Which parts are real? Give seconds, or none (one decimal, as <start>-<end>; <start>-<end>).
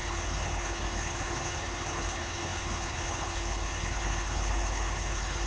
none